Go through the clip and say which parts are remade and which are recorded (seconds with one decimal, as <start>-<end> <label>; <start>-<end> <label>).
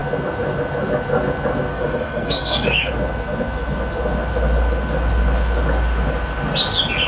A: 0.0-1.7 recorded; 1.7-2.9 remade; 2.9-7.1 recorded